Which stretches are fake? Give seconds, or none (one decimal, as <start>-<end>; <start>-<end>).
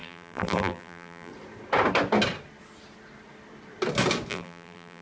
0.0-1.3; 4.3-5.0